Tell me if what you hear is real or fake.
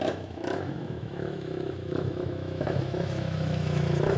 fake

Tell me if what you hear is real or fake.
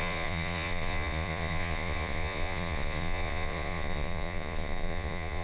fake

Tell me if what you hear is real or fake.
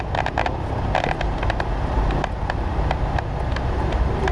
real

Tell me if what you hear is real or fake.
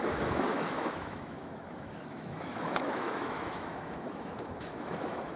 fake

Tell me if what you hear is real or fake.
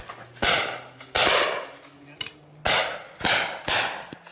real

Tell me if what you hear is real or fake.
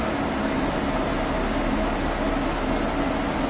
real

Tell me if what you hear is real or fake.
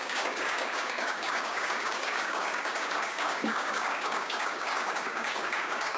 fake